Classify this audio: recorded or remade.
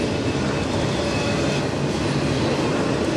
recorded